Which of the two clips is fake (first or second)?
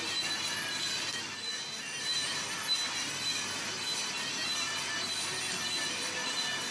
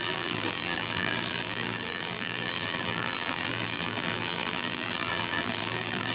second